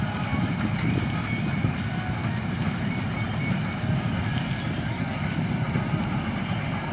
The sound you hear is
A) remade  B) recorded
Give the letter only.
B